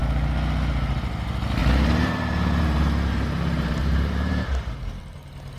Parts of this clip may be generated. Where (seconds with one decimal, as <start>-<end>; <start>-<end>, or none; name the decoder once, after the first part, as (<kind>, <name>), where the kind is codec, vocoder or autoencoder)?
1.6-5.0 (vocoder, BigVGAN v2)